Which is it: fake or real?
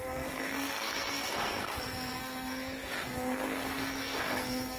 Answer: fake